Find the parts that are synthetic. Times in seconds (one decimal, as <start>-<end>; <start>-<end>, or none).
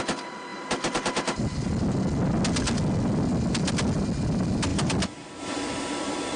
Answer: 0.5-1.4; 4.7-5.9